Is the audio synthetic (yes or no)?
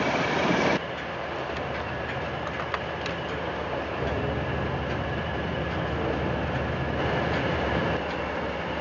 no